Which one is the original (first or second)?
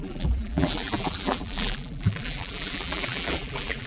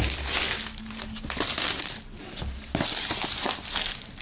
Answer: second